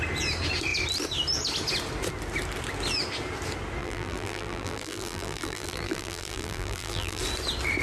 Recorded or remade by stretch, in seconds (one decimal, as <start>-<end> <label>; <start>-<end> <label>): 0.0-3.8 recorded; 3.8-7.2 remade; 7.2-7.8 recorded